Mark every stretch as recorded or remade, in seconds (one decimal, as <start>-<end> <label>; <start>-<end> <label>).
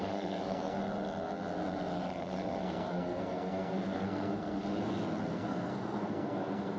0.0-0.8 remade; 0.8-2.2 recorded; 2.2-4.6 remade; 4.6-5.3 recorded; 5.3-6.8 remade